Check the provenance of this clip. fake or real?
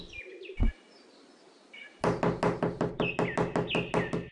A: real